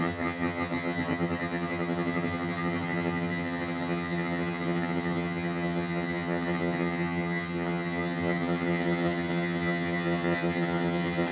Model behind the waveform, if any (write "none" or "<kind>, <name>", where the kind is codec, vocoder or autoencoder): vocoder, HiFi-GAN